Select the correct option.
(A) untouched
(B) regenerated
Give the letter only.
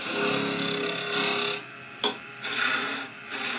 A